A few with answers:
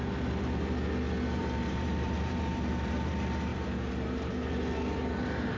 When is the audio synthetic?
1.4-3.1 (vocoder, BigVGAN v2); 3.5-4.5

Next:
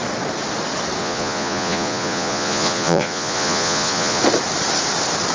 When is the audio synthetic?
1.0-4.2 (vocoder, Vocos)

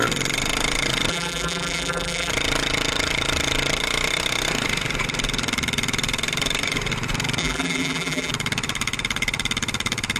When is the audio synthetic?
1.1-2.3 (vocoder, BigVGAN v2); 7.4-8.3